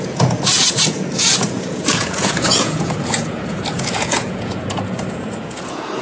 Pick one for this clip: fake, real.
fake